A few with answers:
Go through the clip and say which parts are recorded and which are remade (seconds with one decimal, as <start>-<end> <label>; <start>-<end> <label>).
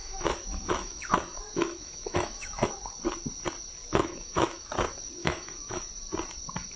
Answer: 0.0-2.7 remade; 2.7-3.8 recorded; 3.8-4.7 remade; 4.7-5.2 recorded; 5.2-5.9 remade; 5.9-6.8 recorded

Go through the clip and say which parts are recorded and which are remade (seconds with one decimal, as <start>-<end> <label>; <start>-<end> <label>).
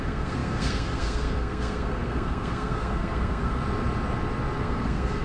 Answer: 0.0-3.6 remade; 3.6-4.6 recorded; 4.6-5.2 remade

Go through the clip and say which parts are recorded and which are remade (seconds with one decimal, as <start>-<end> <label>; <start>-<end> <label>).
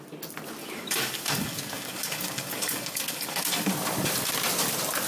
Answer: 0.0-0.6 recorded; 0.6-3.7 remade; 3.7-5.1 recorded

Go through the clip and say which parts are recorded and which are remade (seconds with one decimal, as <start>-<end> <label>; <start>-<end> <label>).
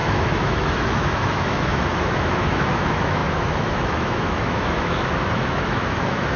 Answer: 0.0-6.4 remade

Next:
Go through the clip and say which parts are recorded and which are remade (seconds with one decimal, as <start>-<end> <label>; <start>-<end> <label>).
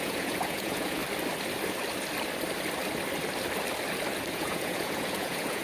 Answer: 0.0-1.0 remade; 1.0-4.3 recorded; 4.3-5.6 remade